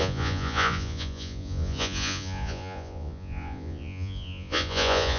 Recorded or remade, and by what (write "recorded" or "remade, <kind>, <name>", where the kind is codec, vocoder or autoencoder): remade, vocoder, Vocos